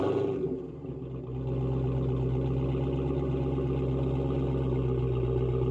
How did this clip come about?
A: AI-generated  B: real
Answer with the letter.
B